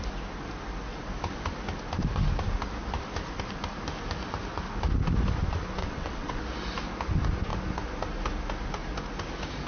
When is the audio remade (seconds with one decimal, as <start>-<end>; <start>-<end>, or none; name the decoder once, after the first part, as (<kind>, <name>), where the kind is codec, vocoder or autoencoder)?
5.8-6.4 (vocoder, WaveNeXt)